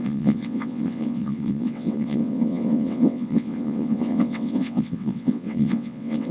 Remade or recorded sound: remade